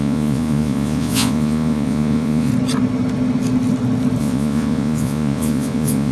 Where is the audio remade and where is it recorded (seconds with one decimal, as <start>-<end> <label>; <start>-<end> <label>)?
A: 0.0-2.5 remade; 2.5-4.2 recorded; 4.2-6.1 remade